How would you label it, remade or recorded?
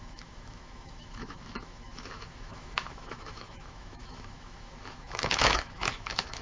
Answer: remade